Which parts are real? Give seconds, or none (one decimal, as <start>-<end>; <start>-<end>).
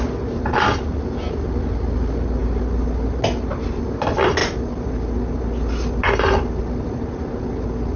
0.0-8.0